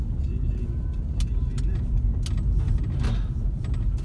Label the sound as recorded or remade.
recorded